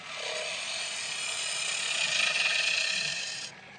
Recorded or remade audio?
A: recorded